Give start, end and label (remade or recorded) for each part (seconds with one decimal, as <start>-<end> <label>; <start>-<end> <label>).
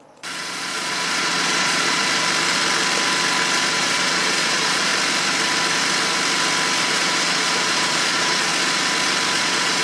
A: 0.0-2.0 remade; 2.0-3.8 recorded; 3.8-4.9 remade; 4.9-6.8 recorded; 6.8-8.5 remade; 8.5-9.4 recorded; 9.4-9.8 remade